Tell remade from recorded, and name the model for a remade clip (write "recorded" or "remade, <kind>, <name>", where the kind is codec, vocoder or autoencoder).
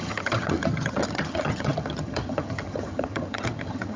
remade, vocoder, HiFi-GAN